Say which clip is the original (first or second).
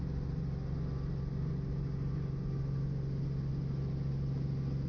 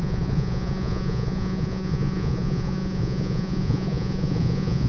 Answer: first